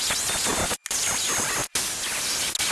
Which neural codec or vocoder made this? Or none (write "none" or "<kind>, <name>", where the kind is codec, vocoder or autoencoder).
none